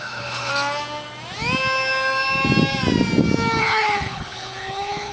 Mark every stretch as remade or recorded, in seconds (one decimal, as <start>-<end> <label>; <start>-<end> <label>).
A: 0.0-0.5 remade; 0.5-3.6 recorded; 3.6-5.1 remade